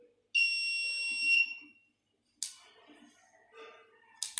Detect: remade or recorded recorded